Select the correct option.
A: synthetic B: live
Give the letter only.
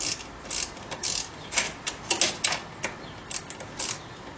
B